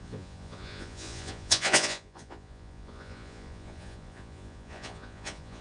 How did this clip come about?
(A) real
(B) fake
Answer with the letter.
B